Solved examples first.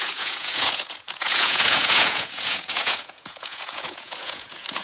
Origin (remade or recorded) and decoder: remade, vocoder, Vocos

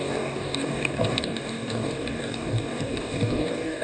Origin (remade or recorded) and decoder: remade, codec, DAC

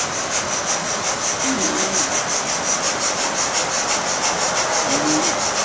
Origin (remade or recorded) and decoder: recorded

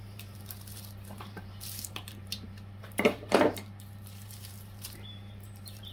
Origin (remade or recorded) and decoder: remade, vocoder, BigVGAN v2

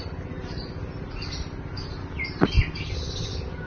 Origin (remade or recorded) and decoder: recorded